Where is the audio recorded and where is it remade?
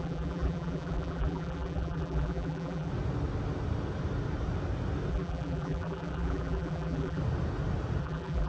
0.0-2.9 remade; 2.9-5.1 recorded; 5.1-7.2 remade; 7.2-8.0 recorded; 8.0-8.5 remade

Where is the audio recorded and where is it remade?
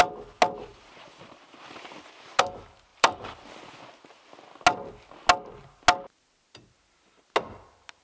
0.0-0.7 recorded; 0.7-2.4 remade; 2.4-2.9 recorded; 2.9-3.5 remade; 3.5-8.0 recorded